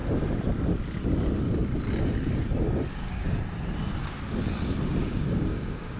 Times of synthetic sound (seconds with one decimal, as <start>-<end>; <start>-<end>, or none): 2.9-3.4; 5.0-6.0